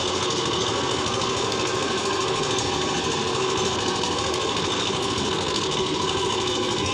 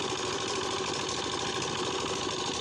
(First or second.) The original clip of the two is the second